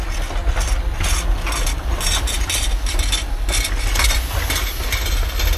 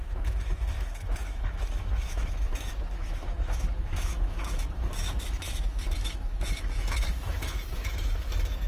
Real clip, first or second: first